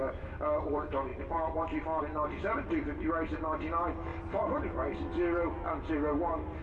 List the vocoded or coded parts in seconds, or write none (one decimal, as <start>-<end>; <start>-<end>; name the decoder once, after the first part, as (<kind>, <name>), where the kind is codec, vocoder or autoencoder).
none

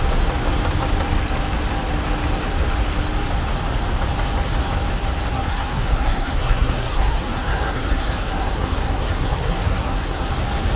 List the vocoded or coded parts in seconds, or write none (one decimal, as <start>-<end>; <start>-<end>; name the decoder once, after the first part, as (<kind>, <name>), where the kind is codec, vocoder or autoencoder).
5.3-10.3 (codec, SNAC)

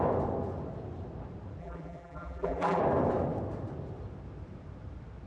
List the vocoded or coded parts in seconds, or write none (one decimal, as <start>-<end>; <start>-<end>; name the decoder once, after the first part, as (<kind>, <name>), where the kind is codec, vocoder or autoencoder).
1.6-2.8 (vocoder, BigVGAN v2)

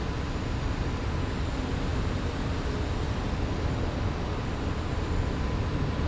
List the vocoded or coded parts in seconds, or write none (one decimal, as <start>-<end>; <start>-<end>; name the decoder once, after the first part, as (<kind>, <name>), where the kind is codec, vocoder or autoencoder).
none

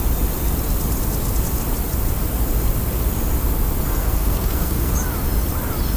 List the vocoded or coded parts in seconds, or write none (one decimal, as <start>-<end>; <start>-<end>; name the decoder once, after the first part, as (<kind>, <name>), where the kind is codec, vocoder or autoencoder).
4.0-4.9 (codec, SNAC)

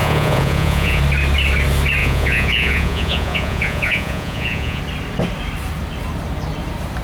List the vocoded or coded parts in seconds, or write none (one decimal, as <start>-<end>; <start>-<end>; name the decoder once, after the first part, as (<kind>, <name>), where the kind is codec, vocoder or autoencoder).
0.0-1.0 (vocoder, Vocos); 2.0-4.8